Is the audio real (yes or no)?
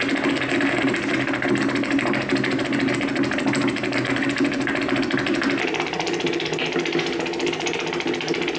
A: yes